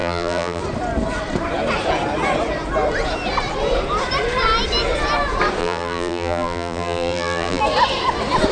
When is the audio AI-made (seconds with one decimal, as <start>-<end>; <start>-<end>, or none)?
0.0-0.6; 5.6-7.6